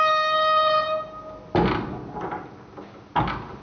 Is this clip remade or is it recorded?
recorded